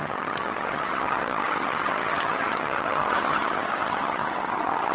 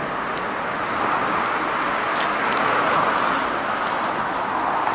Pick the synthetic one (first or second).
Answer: first